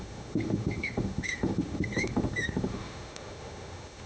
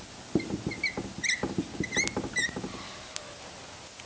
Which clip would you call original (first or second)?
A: second